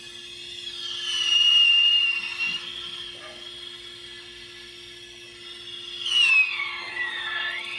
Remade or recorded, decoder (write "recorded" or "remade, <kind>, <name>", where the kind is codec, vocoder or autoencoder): recorded